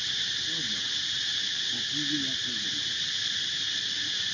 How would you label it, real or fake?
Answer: real